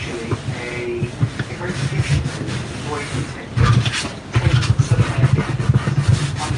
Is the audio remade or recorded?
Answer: recorded